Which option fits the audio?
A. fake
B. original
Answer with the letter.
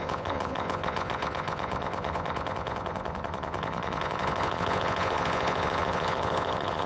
A